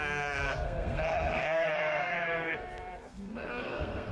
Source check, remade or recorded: remade